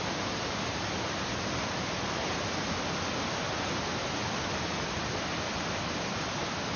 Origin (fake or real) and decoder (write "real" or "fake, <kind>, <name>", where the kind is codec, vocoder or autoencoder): real